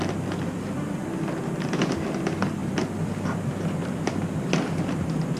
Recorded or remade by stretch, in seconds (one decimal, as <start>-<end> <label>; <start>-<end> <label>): 0.0-1.0 remade; 1.0-1.6 recorded; 1.6-5.4 remade